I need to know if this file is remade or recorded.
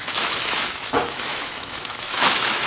remade